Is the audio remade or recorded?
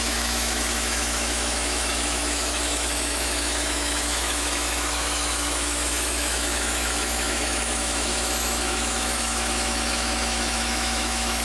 remade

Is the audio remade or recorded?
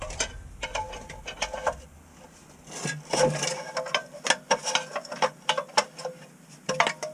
recorded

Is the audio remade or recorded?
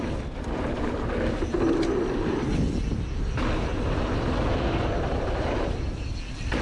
recorded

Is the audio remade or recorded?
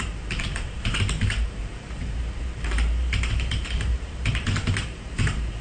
remade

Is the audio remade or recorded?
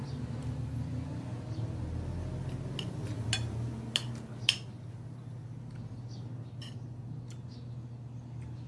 recorded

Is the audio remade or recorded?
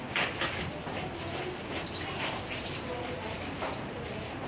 recorded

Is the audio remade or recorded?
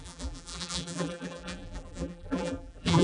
remade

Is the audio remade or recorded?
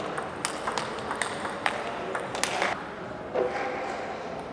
recorded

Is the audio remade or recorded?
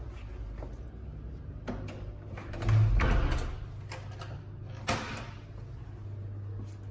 recorded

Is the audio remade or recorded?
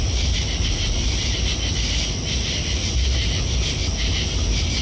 recorded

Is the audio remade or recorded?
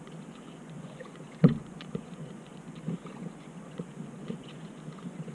remade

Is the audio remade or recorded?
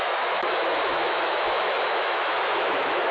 remade